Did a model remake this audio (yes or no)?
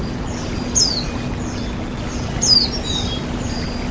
no